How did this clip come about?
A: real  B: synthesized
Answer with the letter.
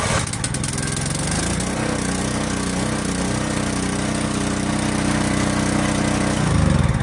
A